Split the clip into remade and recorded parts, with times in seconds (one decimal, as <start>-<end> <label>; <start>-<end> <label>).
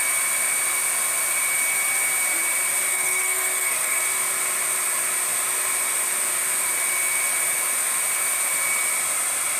0.0-2.9 recorded; 2.9-4.0 remade; 4.0-9.6 recorded